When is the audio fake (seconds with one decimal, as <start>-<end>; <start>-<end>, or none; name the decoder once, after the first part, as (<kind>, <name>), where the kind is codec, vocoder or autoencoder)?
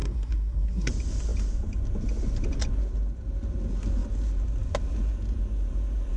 0.0-0.9 (codec, SNAC)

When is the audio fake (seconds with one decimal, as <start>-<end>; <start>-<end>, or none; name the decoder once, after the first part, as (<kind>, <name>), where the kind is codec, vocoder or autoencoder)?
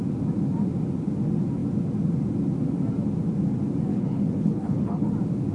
3.9-5.1 (codec, HILCodec)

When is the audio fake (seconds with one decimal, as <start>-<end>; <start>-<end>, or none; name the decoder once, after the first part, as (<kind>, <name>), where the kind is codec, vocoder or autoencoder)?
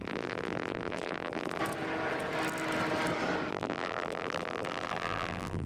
0.0-1.6 (vocoder, BigVGAN v2); 3.5-5.7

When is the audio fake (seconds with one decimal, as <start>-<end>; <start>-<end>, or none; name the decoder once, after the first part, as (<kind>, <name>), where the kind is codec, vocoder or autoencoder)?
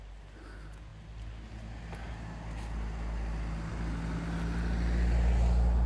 none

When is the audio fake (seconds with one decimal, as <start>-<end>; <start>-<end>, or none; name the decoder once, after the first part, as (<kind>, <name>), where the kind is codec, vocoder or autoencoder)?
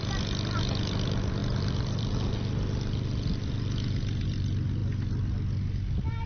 1.4-2.1 (vocoder, BigVGAN v2)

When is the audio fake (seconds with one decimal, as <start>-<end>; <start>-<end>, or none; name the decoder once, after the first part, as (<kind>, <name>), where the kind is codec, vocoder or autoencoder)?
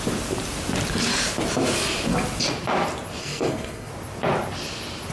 3.2-3.9 (codec, SNAC)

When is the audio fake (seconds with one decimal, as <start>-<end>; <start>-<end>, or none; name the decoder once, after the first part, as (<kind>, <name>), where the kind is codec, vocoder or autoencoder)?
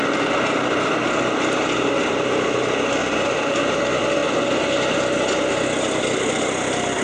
3.0-3.8 (vocoder, BigVGAN v2)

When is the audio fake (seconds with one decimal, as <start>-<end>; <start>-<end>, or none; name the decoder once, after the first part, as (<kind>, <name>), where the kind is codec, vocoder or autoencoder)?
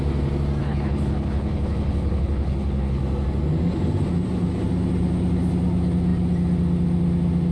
0.6-3.0 (codec, HILCodec)